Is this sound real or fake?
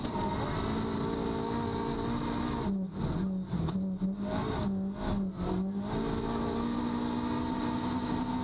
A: real